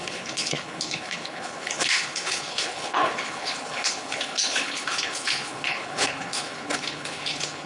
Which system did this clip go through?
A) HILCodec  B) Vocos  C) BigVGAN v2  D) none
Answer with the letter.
A